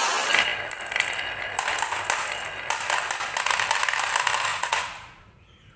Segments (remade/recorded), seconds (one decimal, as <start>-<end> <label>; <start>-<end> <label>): 0.0-4.5 recorded; 4.5-5.8 remade